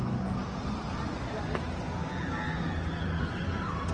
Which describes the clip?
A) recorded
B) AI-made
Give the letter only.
A